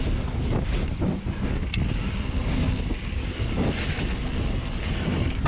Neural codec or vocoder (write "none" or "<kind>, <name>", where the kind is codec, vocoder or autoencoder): none